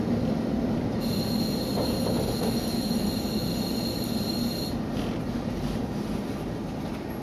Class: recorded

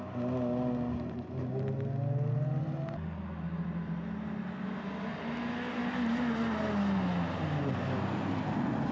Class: recorded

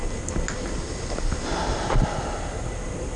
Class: recorded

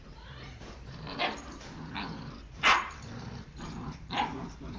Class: remade